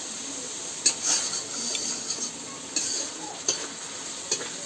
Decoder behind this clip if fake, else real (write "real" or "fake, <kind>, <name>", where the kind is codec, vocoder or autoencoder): real